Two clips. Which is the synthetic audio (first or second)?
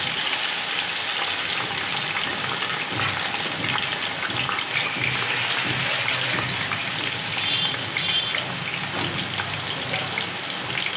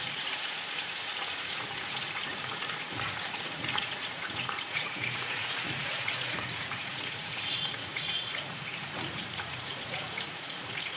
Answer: second